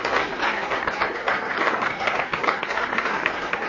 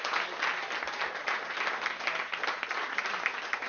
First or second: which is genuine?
second